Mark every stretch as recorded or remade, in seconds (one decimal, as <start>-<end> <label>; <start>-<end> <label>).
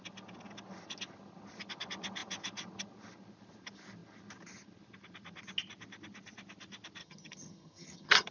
0.0-7.0 recorded; 7.0-8.3 remade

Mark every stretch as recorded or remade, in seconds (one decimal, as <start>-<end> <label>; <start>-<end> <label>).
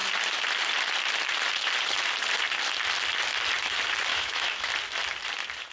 0.0-4.1 recorded; 4.1-4.7 remade; 4.7-5.7 recorded